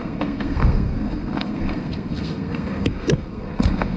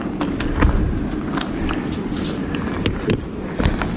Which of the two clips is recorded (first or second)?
second